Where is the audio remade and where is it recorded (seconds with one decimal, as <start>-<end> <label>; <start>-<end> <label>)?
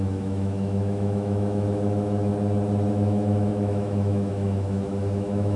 0.0-2.3 remade; 2.3-2.9 recorded; 2.9-5.6 remade